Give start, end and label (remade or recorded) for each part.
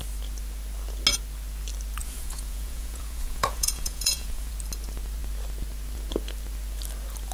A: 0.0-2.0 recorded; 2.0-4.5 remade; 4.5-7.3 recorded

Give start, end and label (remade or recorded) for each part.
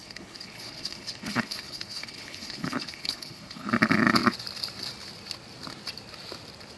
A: 0.0-3.7 remade; 3.7-6.8 recorded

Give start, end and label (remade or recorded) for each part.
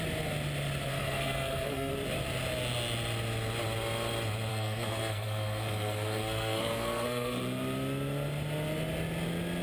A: 0.0-0.9 recorded; 0.9-1.9 remade; 1.9-4.5 recorded; 4.5-7.4 remade; 7.4-9.6 recorded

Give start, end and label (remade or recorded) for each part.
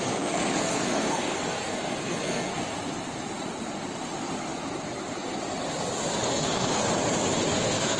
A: 0.0-2.6 remade; 2.6-6.3 recorded; 6.3-6.8 remade; 6.8-7.5 recorded; 7.5-8.0 remade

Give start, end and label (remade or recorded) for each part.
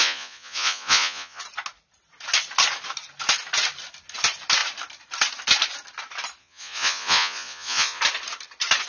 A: 0.0-1.4 remade; 1.4-6.4 recorded; 6.4-8.0 remade; 8.0-8.9 recorded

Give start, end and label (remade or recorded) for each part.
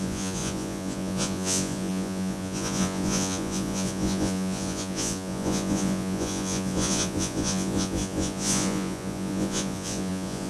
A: 0.0-10.5 remade